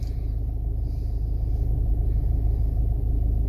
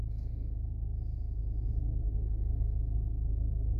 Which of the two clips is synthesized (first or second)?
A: second